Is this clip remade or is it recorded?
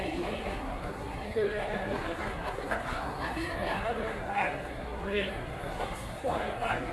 remade